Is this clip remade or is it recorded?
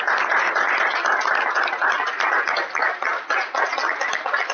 recorded